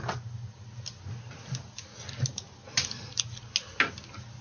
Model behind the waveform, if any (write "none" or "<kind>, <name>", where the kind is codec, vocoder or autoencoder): none